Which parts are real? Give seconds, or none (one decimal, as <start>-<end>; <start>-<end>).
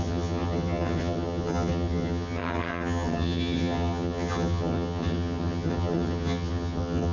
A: none